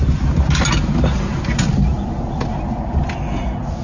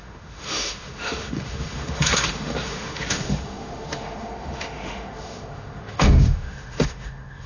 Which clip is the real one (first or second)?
first